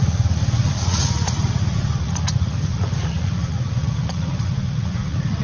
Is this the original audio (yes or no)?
no